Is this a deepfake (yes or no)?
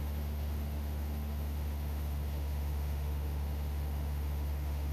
yes